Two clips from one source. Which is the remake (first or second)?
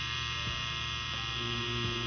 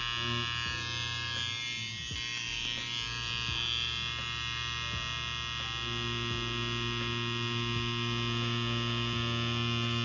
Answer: first